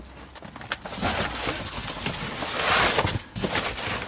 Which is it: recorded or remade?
recorded